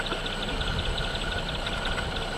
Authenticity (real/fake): real